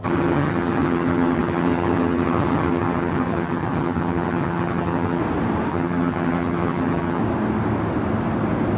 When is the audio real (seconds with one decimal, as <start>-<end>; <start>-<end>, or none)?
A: 5.2-5.7; 7.2-8.8